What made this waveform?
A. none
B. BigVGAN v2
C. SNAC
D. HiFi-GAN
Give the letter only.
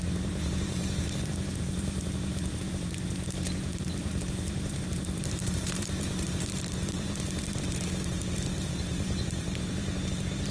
B